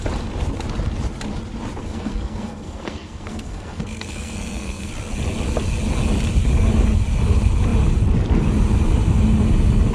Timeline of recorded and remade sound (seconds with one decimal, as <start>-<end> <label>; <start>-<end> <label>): 0.0-1.8 recorded; 1.8-4.9 remade; 4.9-9.9 recorded